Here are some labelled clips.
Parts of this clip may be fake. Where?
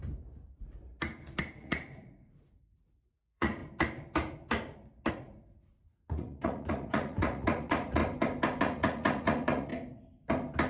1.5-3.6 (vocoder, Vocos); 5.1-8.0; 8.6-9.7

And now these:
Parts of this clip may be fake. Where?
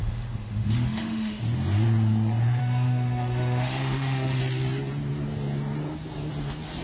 0.0-1.4 (autoencoder, DAC-VAE); 2.6-4.4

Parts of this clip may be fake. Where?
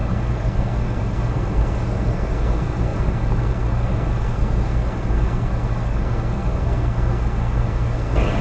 0.0-8.4 (codec, SNAC)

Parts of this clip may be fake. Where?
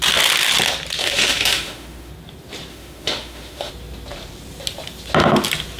1.0-2.1 (autoencoder, DAC-VAE); 2.7-3.7